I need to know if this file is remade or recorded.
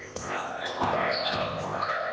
remade